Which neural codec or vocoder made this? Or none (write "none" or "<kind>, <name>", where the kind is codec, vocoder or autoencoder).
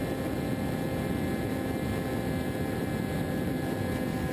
none